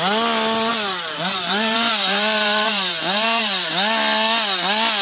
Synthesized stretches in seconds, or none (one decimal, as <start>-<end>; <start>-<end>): 0.7-3.7